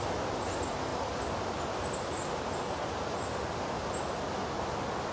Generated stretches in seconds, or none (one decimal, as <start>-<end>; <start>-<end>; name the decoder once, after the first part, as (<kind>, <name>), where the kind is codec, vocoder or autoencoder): none